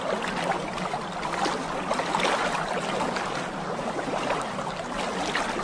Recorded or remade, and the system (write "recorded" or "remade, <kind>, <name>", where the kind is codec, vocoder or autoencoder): recorded